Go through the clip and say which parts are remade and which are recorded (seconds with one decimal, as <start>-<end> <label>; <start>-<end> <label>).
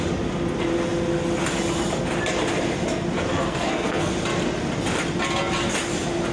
0.0-3.3 recorded; 3.3-4.1 remade; 4.1-6.3 recorded